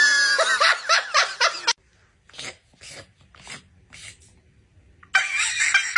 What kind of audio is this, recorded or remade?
recorded